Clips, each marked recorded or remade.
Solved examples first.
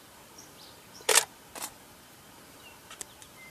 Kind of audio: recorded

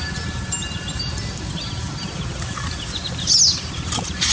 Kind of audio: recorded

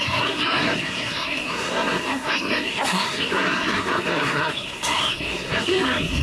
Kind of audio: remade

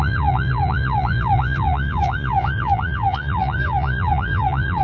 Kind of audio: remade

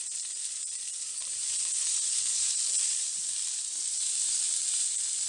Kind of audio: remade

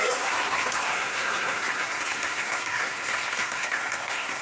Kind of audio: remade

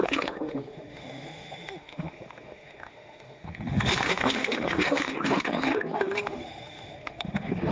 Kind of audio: remade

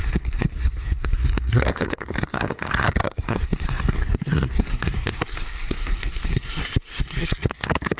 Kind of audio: remade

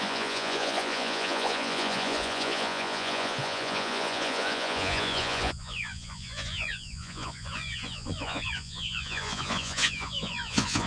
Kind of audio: remade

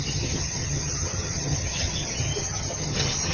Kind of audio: remade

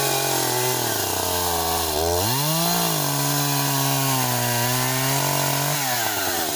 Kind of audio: recorded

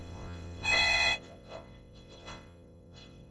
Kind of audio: remade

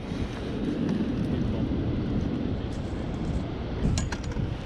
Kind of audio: recorded